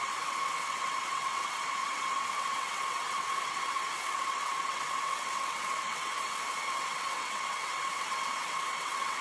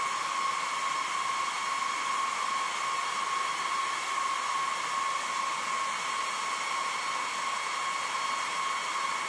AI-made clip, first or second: first